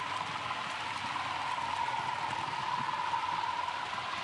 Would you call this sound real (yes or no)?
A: yes